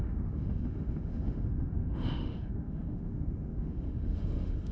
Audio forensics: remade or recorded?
remade